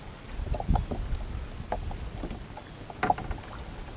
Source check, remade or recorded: recorded